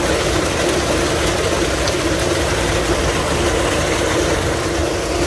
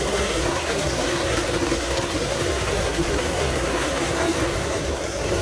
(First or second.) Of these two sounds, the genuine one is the first